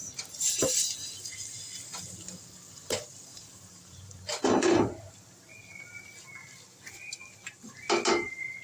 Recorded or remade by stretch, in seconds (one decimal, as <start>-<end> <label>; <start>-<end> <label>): 0.0-1.6 remade; 1.6-3.3 recorded; 3.3-5.0 remade; 5.0-8.6 recorded